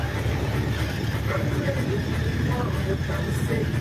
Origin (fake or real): real